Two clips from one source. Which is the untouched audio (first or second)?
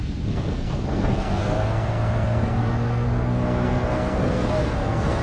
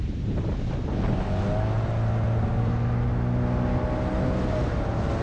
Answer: second